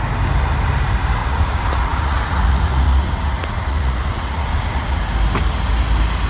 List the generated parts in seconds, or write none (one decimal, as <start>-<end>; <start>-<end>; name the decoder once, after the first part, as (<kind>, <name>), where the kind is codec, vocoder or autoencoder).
1.2-5.0 (vocoder, Vocos)